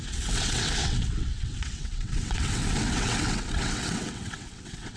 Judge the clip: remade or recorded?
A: remade